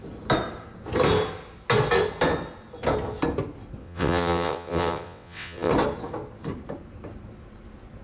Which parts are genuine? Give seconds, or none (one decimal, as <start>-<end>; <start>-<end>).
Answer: 0.0-3.8; 5.7-8.0